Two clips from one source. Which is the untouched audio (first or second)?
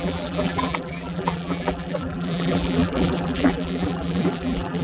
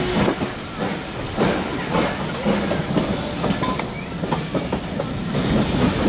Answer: second